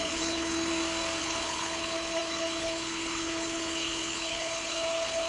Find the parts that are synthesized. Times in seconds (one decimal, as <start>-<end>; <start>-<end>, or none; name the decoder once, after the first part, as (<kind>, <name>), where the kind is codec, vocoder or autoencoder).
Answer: 0.0-0.7 (codec, HILCodec); 1.2-5.3